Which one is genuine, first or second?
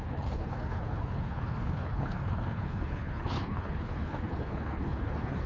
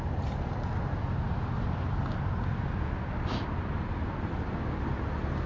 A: second